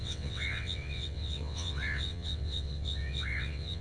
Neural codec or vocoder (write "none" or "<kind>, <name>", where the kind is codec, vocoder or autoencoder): vocoder, WaveNeXt